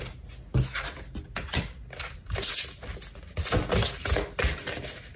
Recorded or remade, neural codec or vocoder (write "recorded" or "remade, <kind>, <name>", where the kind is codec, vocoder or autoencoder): recorded